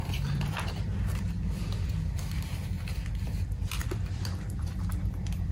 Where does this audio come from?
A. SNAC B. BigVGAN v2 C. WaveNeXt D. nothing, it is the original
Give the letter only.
B